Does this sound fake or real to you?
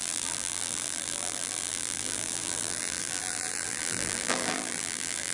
fake